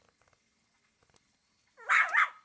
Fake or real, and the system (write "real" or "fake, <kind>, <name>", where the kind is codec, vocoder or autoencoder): real